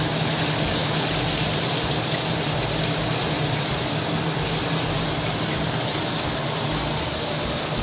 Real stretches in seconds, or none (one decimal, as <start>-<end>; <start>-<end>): 0.0-7.8